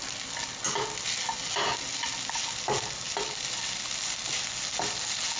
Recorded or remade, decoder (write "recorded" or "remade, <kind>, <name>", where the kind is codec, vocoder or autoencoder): recorded